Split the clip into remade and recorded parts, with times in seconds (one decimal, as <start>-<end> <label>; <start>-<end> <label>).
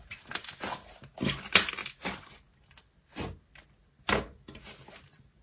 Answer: 0.0-1.8 recorded; 1.8-2.3 remade; 2.3-5.4 recorded